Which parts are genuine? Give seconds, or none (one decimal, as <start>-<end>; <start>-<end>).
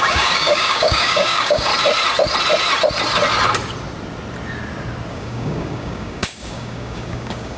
1.7-5.1